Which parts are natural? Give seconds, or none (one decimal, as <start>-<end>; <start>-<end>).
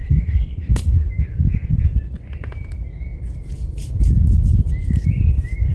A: 1.1-5.7